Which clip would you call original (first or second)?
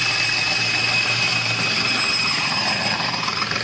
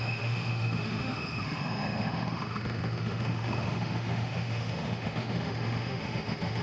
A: first